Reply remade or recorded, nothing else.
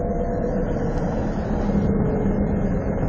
recorded